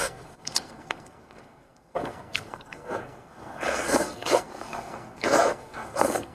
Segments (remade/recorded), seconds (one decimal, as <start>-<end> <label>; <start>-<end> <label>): 0.0-6.3 remade